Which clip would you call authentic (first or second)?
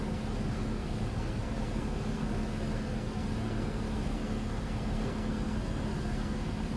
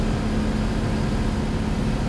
second